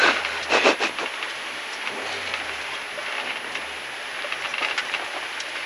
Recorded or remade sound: recorded